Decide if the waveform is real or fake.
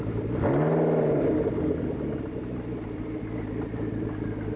real